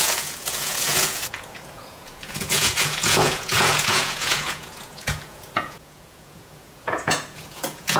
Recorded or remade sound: remade